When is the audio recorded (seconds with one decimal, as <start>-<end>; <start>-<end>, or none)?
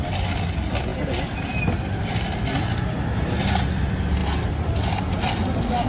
0.0-5.9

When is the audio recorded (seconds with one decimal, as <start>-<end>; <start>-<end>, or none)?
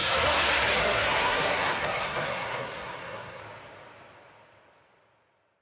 3.4-5.6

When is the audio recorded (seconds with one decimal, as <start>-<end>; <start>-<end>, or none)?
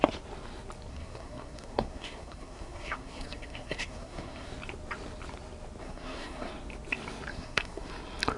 0.0-0.9; 4.5-5.8; 6.5-7.3; 7.9-8.4